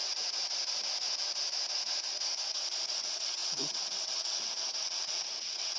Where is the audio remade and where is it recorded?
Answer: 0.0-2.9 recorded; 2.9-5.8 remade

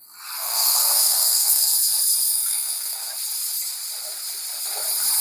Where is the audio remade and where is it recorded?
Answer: 0.0-0.4 recorded; 0.4-1.8 remade; 1.8-2.2 recorded; 2.2-3.1 remade; 3.1-5.2 recorded

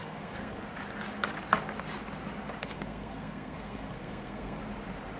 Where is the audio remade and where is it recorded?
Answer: 0.0-0.6 remade; 0.6-2.6 recorded; 2.6-4.6 remade; 4.6-5.2 recorded